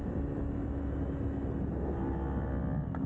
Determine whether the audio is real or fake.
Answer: real